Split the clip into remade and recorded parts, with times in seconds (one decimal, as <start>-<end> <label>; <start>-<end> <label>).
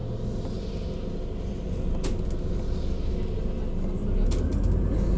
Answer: 0.0-5.2 recorded